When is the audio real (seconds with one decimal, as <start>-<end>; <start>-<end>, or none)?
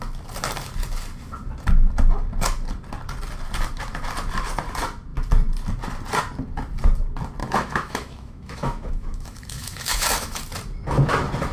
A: 0.0-7.4; 10.4-11.5